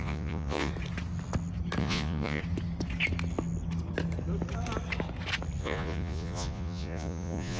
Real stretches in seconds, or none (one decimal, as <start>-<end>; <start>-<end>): 0.7-1.8; 2.4-5.6